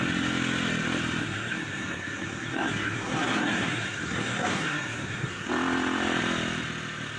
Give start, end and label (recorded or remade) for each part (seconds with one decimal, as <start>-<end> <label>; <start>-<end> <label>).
0.0-1.2 recorded; 1.2-5.5 remade; 5.5-7.2 recorded